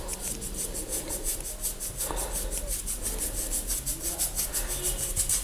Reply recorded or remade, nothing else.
recorded